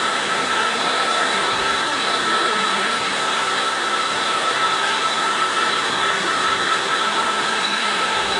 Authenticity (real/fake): fake